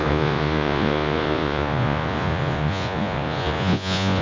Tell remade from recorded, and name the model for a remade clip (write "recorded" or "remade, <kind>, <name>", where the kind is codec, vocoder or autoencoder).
remade, vocoder, Vocos